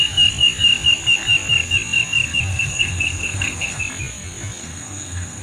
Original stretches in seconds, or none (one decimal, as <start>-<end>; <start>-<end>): 0.0-2.5; 3.8-4.6